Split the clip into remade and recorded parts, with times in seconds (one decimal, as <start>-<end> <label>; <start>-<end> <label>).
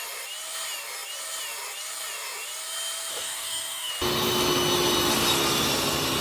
0.0-3.1 recorded; 3.1-3.9 remade; 3.9-6.2 recorded